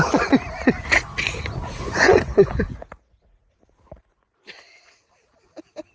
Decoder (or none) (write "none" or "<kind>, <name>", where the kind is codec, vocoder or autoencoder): vocoder, Vocos